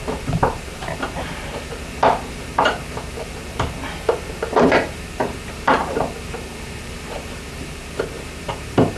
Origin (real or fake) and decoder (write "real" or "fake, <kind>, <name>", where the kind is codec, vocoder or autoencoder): fake, vocoder, BigVGAN v2